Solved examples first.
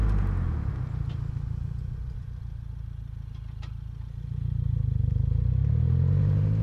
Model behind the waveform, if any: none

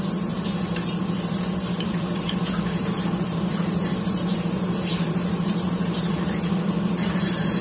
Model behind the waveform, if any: vocoder, BigVGAN v2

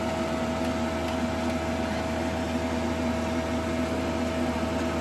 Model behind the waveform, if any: none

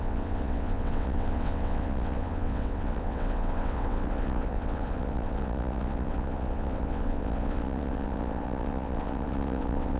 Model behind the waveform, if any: vocoder, WaveNeXt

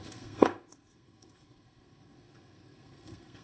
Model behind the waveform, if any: codec, SNAC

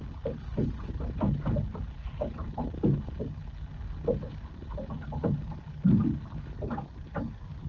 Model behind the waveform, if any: none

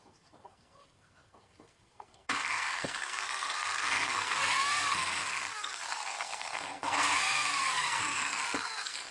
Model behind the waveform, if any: codec, SNAC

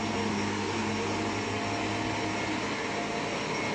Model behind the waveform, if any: none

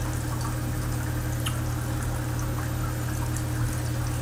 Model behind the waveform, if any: none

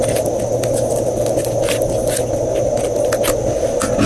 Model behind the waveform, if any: none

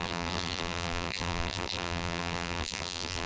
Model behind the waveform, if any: vocoder, BigVGAN v2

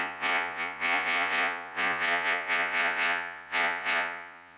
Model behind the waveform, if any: vocoder, Vocos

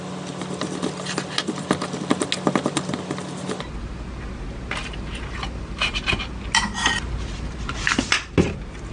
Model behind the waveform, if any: none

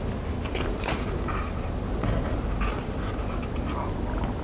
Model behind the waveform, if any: none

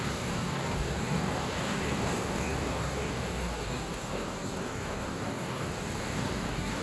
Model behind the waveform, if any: codec, DAC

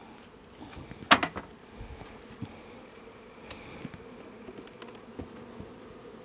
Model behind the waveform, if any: none